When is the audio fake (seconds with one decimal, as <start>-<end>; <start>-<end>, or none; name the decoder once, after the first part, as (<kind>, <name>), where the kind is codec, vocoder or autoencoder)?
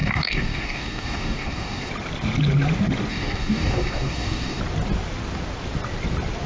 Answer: 0.0-1.9 (codec, DAC); 3.1-4.6